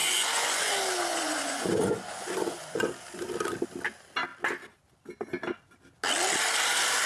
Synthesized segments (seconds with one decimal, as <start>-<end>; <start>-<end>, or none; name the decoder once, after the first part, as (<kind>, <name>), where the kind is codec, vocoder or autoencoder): 0.0-0.7 (vocoder, Vocos); 1.1-2.9